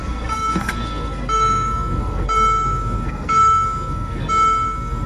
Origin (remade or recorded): remade